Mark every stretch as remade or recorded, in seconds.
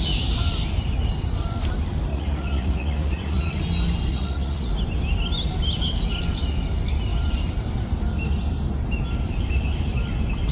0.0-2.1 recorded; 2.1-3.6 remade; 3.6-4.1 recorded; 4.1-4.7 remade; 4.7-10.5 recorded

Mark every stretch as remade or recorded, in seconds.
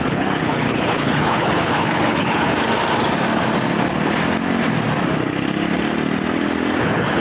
0.0-2.5 remade; 2.5-6.8 recorded; 6.8-7.2 remade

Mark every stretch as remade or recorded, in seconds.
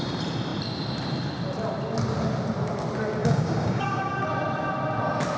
0.0-3.2 recorded; 3.2-4.1 remade; 4.1-5.4 recorded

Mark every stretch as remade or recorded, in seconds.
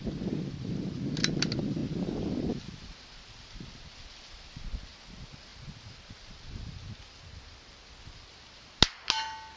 0.0-9.6 recorded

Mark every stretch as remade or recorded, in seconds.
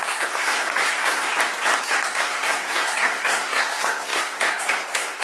0.0-1.3 remade; 1.3-1.8 recorded; 1.8-5.2 remade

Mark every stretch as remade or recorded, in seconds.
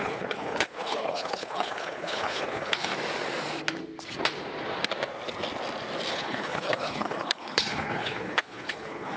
0.0-2.9 remade; 2.9-6.1 recorded; 6.1-9.2 remade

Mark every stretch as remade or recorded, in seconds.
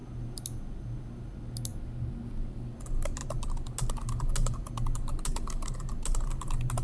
0.0-6.8 recorded